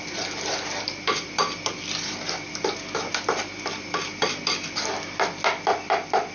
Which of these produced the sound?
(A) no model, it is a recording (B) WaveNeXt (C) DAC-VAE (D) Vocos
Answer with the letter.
A